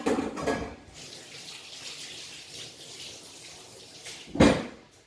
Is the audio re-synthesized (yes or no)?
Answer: no